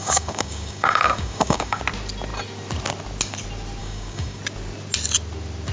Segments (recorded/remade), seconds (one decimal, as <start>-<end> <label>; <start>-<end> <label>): 0.0-1.8 remade; 1.8-3.8 recorded; 3.8-4.4 remade; 4.4-5.7 recorded